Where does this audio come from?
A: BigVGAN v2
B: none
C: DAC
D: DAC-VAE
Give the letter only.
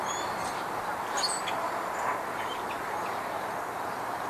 A